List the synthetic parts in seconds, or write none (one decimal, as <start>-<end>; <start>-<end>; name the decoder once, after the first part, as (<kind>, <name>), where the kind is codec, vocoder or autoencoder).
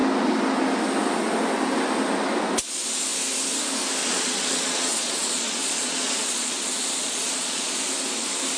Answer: 4.0-7.8 (vocoder, Vocos)